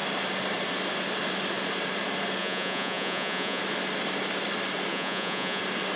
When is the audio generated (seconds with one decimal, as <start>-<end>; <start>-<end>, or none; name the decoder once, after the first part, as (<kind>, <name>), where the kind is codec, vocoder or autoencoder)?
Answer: 2.4-3.6 (vocoder, Vocos); 4.9-5.6